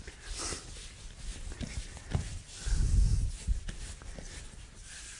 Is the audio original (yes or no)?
yes